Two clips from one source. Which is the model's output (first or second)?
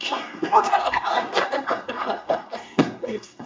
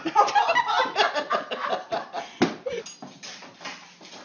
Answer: first